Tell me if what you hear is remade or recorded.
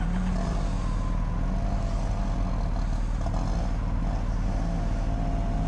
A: recorded